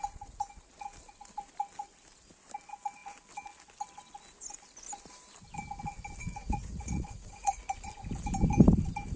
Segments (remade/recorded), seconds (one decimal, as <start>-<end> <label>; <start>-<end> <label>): 0.0-6.2 recorded; 6.2-7.6 remade; 7.6-9.2 recorded